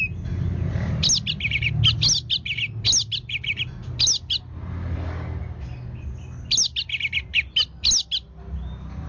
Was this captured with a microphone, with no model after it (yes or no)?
yes